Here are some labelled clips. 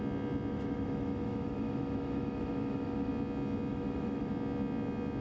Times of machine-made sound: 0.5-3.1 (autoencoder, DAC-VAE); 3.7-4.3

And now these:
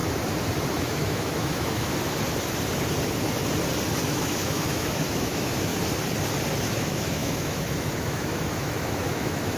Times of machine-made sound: 0.7-1.9 (autoencoder, DAC-VAE); 4.0-5.7; 6.6-9.6

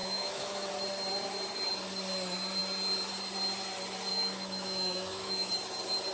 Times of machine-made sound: 0.0-0.7 (autoencoder, DAC-VAE); 4.1-5.5

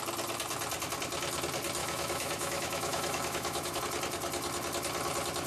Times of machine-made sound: 1.8-3.8 (autoencoder, DAC-VAE)

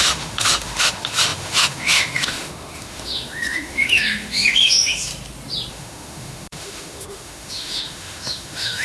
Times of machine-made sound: 0.0-5.1 (autoencoder, DAC-VAE); 5.7-8.8

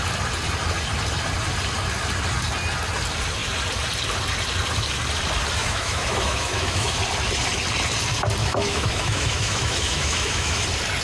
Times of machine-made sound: 5.6-7.0 (autoencoder, DAC-VAE); 8.4-10.6

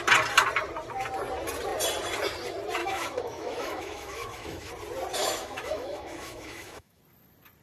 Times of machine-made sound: 2.8-4.7 (autoencoder, DAC-VAE); 5.2-7.0

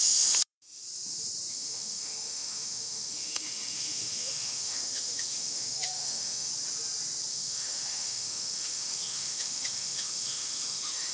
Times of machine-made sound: 0.0-0.8 (autoencoder, DAC-VAE); 1.5-6.5; 7.3-11.1